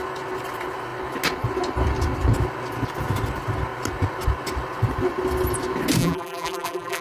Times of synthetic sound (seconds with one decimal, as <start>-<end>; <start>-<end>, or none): 6.0-7.0